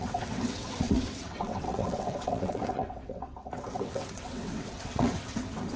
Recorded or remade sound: remade